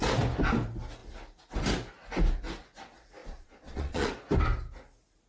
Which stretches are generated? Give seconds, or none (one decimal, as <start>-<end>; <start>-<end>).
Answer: 3.2-4.1